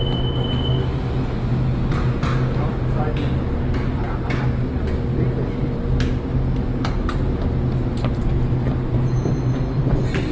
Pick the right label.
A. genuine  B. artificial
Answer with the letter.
A